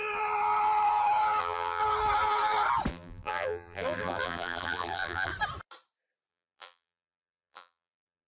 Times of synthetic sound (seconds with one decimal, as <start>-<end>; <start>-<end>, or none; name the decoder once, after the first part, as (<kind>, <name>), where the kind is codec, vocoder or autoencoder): 1.4-1.8 (vocoder, BigVGAN v2); 2.9-5.3; 6.3-8.3